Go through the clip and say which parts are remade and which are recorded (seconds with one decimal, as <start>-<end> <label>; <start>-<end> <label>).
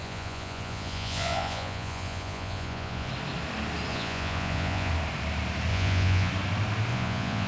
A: 0.0-3.1 remade; 3.1-3.9 recorded; 3.9-4.9 remade; 4.9-5.7 recorded; 5.7-6.3 remade; 6.3-6.9 recorded; 6.9-7.5 remade